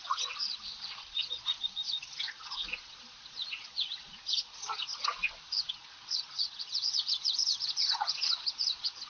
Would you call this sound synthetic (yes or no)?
yes